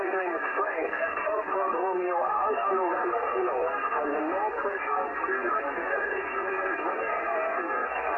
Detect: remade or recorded remade